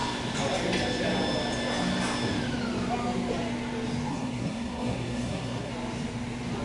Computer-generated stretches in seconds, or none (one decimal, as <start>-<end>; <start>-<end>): 4.1-5.7